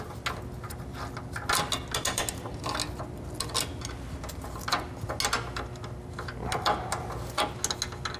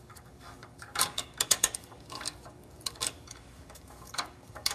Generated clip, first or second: second